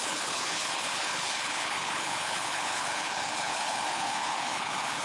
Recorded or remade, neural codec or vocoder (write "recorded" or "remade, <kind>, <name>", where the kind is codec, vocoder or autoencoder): remade, codec, HILCodec